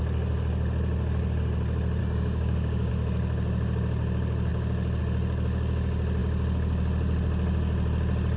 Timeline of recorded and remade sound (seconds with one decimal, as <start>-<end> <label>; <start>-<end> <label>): 0.0-2.0 recorded; 2.0-2.9 remade; 2.9-8.4 recorded